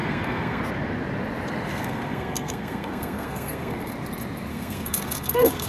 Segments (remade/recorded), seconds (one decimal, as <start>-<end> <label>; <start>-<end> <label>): 0.0-0.6 remade; 0.6-1.7 recorded; 1.7-3.9 remade; 3.9-4.5 recorded; 4.5-5.7 remade